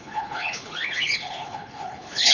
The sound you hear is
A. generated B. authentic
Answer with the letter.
A